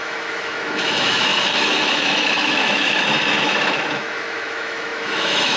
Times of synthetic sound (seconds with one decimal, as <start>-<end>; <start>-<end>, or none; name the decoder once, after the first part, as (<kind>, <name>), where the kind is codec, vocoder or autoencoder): 0.0-5.6 (autoencoder, DAC-VAE)